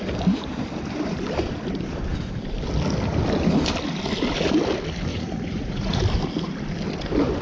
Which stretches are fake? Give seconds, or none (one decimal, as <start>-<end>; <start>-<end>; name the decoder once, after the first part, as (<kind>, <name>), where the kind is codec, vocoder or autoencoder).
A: 5.1-6.0 (vocoder, Vocos)